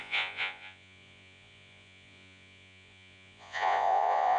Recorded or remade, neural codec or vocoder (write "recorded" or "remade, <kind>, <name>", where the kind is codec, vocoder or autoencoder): remade, vocoder, Vocos